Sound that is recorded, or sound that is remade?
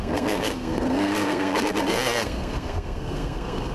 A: remade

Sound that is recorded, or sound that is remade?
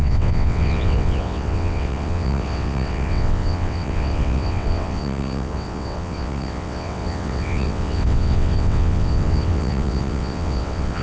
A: remade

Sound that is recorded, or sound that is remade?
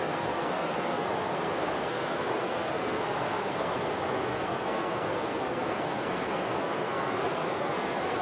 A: remade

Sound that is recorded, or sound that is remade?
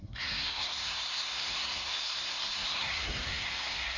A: remade